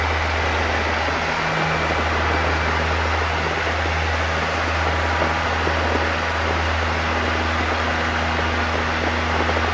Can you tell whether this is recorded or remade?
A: recorded